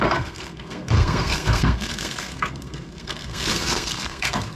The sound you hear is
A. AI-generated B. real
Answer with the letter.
A